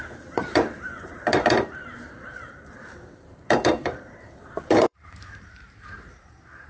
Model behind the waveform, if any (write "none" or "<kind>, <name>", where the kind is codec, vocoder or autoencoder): vocoder, BigVGAN v2